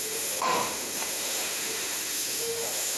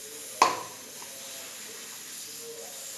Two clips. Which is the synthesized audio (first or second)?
first